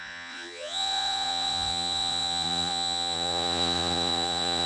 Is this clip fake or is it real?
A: fake